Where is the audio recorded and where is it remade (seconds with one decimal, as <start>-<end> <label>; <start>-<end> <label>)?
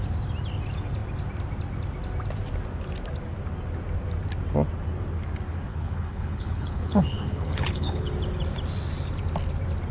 0.0-5.7 recorded; 5.7-8.1 remade; 8.1-9.9 recorded